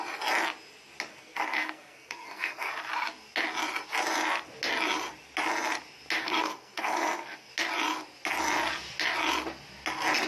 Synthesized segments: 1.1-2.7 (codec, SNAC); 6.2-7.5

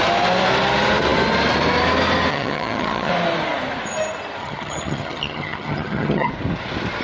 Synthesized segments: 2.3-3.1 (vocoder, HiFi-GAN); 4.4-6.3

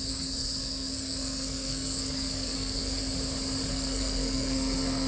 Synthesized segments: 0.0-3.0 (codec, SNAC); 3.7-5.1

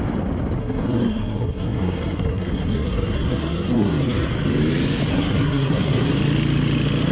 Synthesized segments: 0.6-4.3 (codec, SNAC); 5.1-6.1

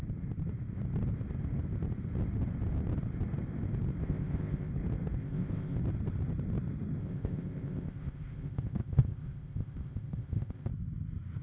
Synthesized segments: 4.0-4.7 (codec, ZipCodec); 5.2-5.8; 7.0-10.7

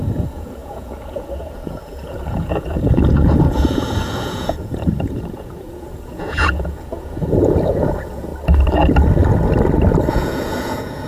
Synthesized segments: 0.0-8.3 (vocoder, Vocos); 10.1-11.1